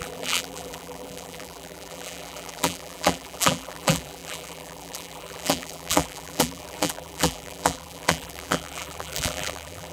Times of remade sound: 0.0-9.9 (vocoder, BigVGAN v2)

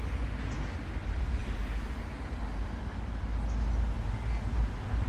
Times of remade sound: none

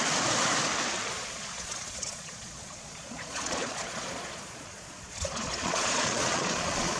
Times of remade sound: 1.1-7.0 (vocoder, Vocos)

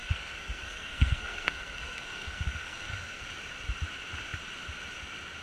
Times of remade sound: 0.0-3.2 (codec, SNAC)

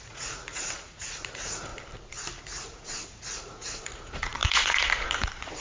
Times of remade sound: 0.0-1.7 (vocoder, Vocos); 2.4-5.6

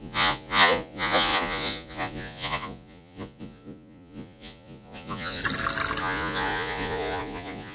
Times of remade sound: 0.0-5.4 (vocoder, Vocos); 6.0-7.7

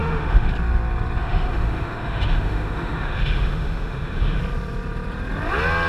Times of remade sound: 0.0-0.5 (autoencoder, DAC-VAE); 1.2-4.4